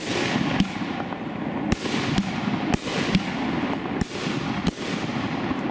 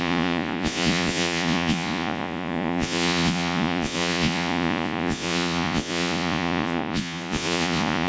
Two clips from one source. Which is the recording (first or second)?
first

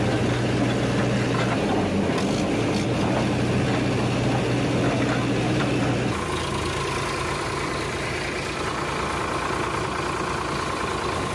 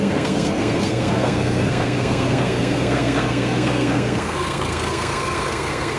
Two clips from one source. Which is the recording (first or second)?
first